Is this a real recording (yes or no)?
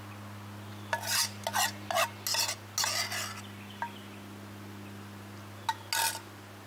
yes